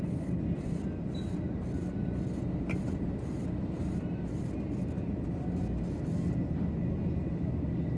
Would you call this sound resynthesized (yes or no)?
no